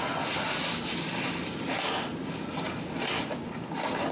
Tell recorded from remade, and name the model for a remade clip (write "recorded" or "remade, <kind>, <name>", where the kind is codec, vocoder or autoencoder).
recorded